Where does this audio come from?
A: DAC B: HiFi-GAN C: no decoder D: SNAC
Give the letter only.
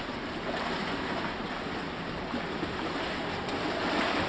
C